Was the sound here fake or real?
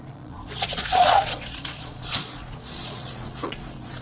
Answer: fake